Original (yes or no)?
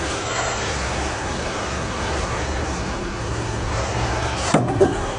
no